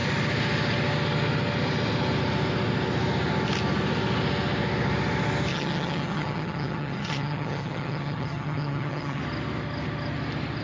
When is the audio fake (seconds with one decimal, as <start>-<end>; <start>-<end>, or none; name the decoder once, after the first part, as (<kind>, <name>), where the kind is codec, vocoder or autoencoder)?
5.5-9.2 (vocoder, HiFi-GAN)